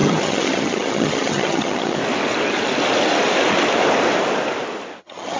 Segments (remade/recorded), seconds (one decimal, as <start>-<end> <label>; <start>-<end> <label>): 0.0-2.0 remade; 2.0-5.0 recorded; 5.0-5.4 remade